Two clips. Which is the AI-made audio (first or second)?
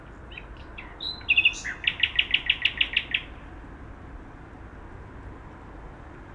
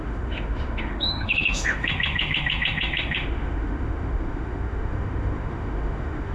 second